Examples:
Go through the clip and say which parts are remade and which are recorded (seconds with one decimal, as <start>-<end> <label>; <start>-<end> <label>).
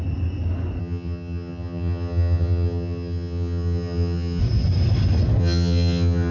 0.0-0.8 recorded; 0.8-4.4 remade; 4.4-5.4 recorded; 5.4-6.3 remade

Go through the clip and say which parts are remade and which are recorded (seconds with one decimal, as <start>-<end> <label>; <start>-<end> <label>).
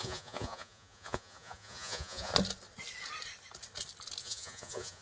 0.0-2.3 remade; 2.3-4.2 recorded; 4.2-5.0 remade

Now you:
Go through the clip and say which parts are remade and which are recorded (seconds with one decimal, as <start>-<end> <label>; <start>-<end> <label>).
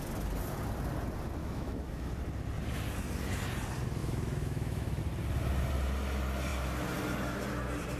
0.0-1.4 recorded; 1.4-2.1 remade; 2.1-4.0 recorded; 4.0-5.0 remade; 5.0-8.0 recorded